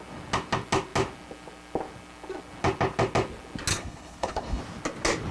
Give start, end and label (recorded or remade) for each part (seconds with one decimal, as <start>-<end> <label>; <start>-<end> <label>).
0.0-3.7 recorded; 3.7-4.6 remade; 4.6-5.3 recorded